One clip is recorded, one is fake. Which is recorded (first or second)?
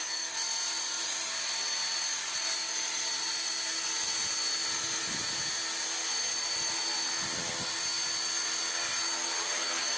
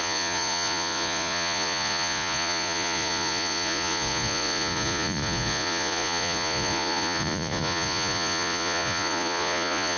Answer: first